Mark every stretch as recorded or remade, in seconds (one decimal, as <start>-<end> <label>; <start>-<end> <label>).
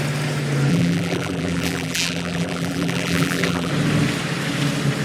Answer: 0.0-0.7 recorded; 0.7-3.7 remade; 3.7-5.0 recorded